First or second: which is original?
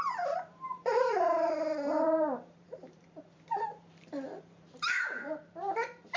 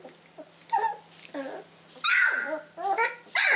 second